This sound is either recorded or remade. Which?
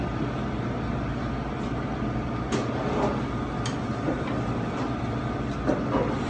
recorded